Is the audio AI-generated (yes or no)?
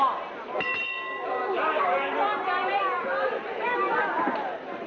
no